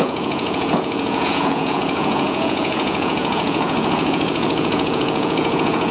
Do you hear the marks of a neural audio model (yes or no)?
yes